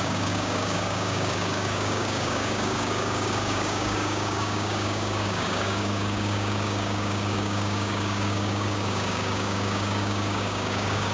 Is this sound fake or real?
fake